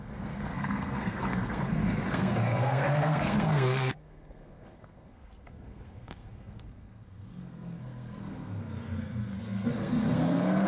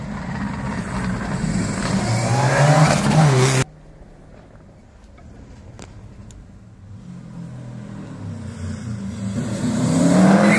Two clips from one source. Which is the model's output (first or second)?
first